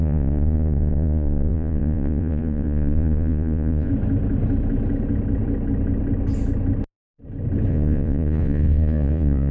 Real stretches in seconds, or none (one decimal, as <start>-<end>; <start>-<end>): 3.9-7.7